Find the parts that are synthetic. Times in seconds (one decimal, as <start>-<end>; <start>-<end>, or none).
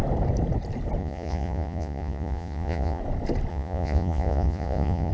1.0-3.0; 3.5-5.1